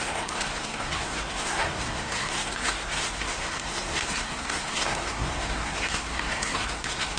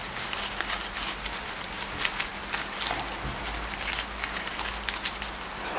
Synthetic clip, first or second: first